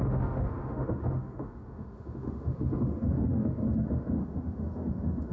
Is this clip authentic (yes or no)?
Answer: no